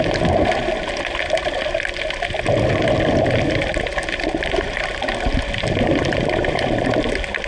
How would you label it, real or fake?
real